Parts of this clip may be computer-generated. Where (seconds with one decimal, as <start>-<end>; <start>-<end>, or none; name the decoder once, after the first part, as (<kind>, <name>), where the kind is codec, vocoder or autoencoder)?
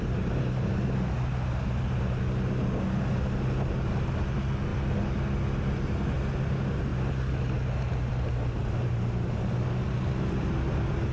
none